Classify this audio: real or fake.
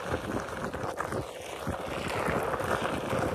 real